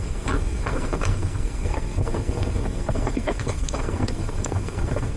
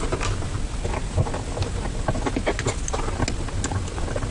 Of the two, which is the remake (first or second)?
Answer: first